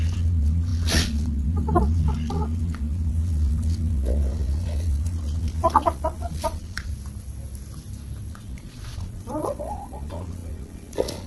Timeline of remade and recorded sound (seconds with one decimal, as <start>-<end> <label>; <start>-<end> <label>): 0.0-6.9 remade; 6.9-8.3 recorded; 8.3-11.3 remade